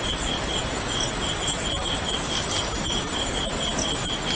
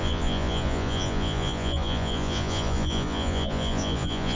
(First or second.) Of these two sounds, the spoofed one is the second